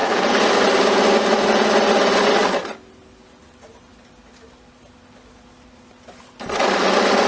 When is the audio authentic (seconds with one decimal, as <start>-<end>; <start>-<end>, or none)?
0.0-2.4; 3.4-7.3